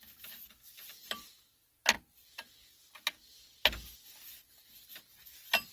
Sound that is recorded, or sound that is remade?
recorded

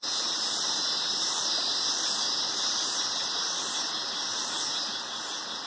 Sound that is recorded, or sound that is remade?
recorded